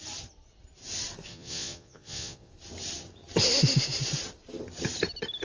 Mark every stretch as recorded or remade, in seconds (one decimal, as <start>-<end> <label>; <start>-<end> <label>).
0.0-1.3 recorded; 1.3-2.5 remade; 2.5-5.4 recorded